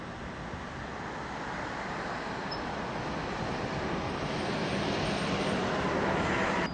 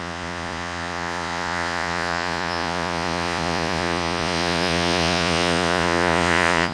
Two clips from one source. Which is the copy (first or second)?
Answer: second